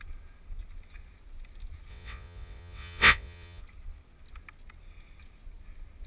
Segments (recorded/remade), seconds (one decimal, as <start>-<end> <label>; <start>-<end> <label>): 0.0-1.9 recorded; 1.9-3.6 remade; 3.6-6.1 recorded